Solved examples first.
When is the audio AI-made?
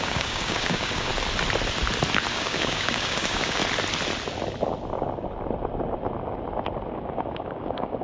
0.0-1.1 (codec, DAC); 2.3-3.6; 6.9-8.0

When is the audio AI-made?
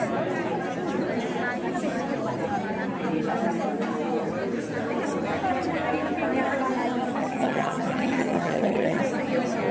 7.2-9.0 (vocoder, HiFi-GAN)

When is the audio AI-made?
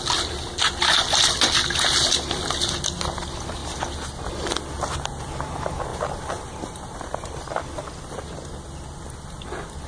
3.6-4.6 (vocoder, BigVGAN v2); 5.9-8.5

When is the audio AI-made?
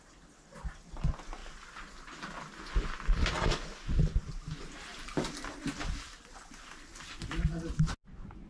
4.9-6.3 (vocoder, BigVGAN v2); 6.9-7.7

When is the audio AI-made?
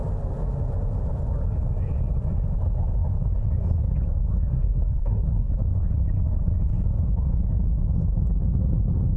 4.5-5.5 (codec, SNAC)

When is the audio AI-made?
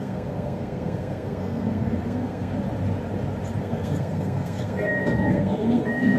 0.0-2.5 (codec, SNAC); 3.6-6.2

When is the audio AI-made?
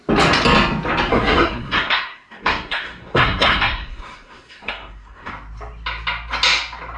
1.1-5.3 (codec, SNAC)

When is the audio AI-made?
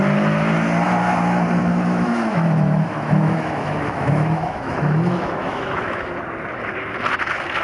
1.6-6.1 (autoencoder, DAC-VAE)